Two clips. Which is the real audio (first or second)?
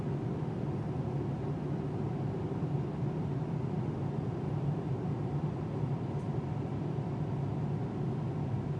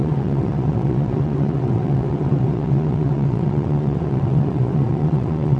first